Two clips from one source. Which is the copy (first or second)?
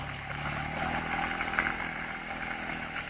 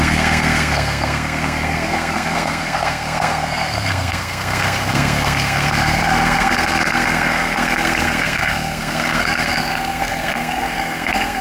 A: second